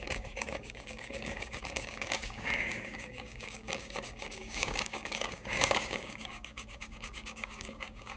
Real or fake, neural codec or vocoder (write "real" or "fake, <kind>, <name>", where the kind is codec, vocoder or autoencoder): fake, codec, DAC